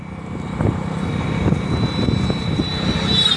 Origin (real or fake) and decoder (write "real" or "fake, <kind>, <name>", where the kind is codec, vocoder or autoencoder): real